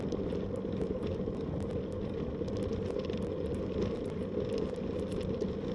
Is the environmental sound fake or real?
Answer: real